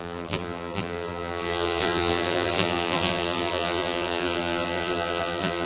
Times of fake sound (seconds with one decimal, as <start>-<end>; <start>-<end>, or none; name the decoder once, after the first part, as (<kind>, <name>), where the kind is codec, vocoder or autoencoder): 0.0-5.7 (vocoder, BigVGAN v2)